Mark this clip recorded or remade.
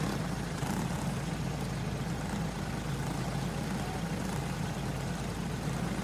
recorded